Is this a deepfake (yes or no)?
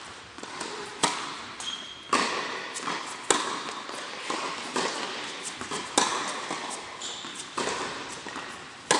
no